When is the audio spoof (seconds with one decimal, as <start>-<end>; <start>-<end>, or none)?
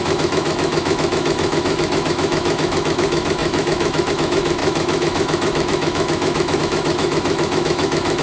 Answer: 0.0-8.2